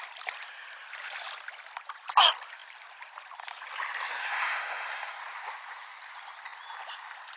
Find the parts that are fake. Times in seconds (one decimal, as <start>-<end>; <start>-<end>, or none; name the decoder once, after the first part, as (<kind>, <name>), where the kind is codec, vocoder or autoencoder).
4.2-5.2 (codec, SNAC)